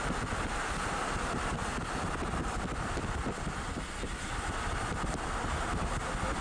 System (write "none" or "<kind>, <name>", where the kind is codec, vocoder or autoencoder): none